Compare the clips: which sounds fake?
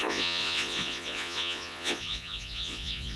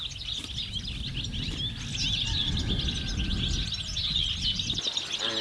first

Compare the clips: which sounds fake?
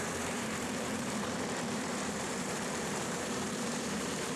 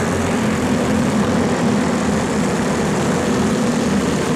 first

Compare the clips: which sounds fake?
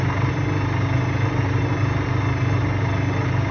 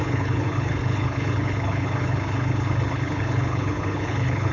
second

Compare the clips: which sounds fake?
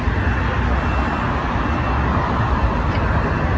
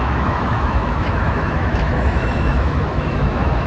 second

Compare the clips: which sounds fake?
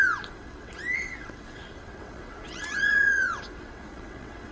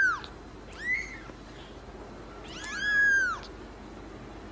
first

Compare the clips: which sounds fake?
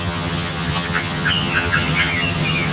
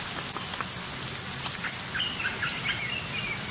first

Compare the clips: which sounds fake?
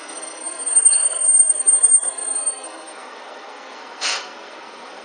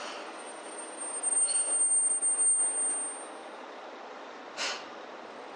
first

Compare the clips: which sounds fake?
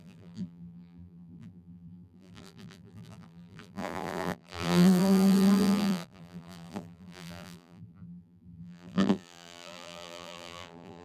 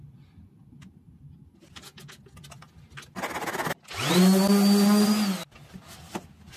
first